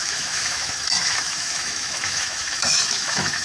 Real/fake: fake